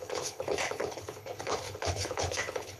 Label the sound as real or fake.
fake